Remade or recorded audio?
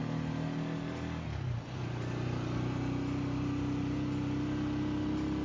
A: recorded